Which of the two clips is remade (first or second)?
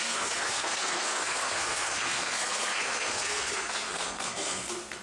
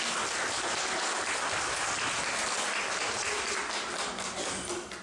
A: first